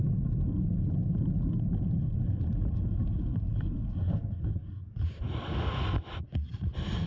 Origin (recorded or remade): recorded